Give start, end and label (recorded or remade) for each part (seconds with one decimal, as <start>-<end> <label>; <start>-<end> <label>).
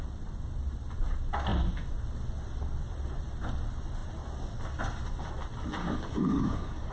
0.0-5.8 recorded; 5.8-6.9 remade